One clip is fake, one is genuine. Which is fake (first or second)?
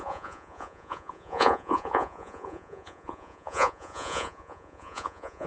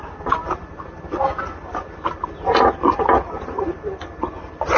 first